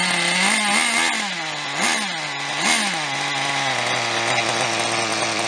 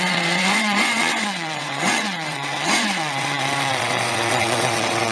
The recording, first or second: first